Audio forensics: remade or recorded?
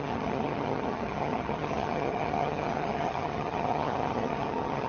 remade